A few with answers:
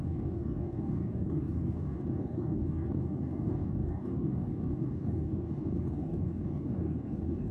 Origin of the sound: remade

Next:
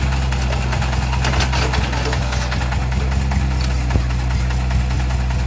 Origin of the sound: recorded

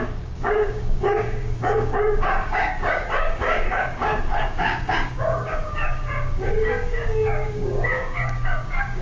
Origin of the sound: remade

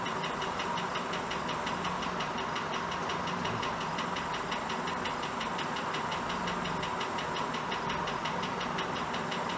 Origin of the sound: recorded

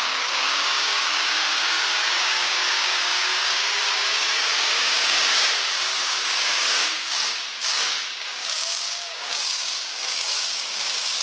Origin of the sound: remade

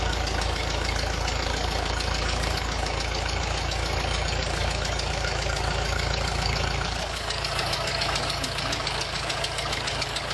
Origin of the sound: remade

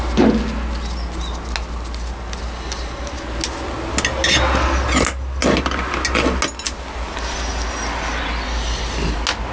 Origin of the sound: recorded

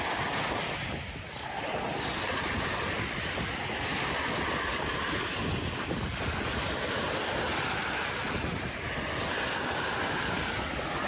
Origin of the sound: recorded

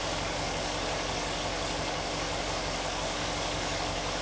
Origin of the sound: remade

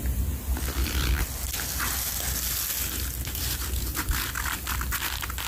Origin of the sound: recorded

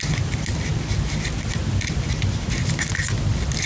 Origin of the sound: recorded